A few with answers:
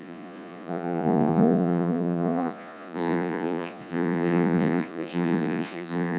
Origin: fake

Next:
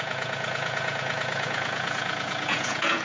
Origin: fake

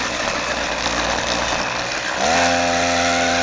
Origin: real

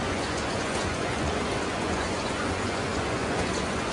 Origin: fake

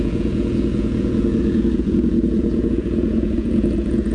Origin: fake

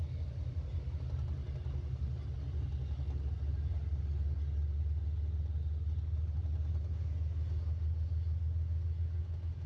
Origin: real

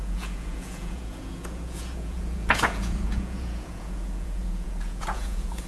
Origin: fake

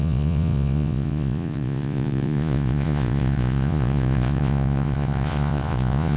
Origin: fake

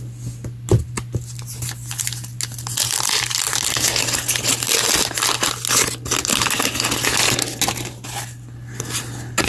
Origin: real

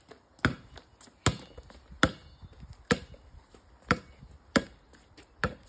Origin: real